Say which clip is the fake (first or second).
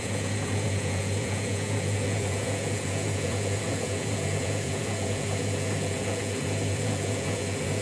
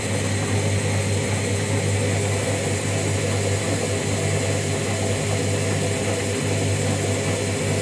first